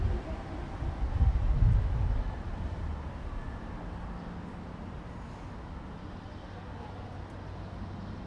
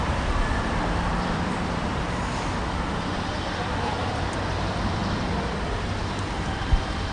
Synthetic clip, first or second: second